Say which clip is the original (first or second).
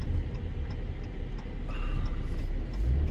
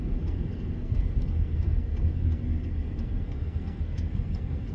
first